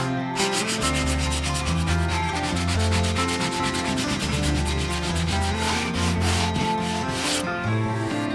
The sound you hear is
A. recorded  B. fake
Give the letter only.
A